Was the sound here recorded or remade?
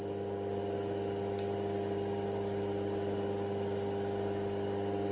recorded